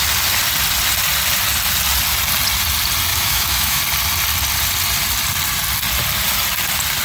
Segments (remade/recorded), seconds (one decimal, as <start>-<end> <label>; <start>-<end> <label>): 0.0-3.1 recorded; 3.1-3.8 remade; 3.8-7.0 recorded